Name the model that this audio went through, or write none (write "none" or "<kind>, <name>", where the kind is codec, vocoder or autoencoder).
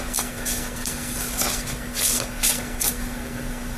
codec, SNAC